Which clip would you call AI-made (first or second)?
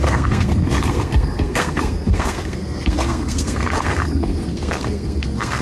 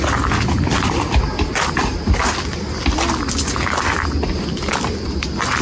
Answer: first